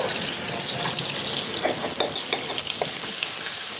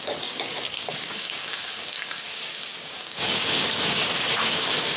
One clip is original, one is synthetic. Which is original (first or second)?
first